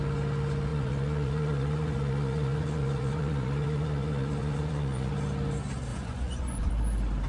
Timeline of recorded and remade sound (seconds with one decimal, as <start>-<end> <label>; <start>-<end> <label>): 0.0-0.7 recorded; 0.7-5.1 remade; 5.1-5.9 recorded; 5.9-6.7 remade; 6.7-7.3 recorded